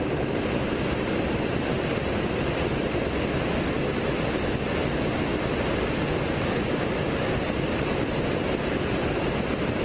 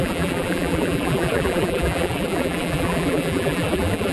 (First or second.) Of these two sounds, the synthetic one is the second